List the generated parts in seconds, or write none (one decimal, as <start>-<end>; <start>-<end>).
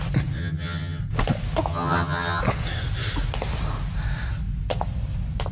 0.4-1.0; 1.7-2.4